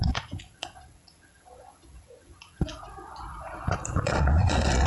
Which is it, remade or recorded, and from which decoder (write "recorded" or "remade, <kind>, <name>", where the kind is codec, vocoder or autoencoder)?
remade, vocoder, Vocos